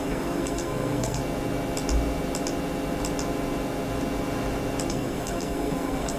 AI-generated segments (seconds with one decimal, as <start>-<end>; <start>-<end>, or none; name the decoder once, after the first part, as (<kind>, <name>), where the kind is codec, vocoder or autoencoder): 0.0-1.2 (codec, SNAC); 4.9-6.2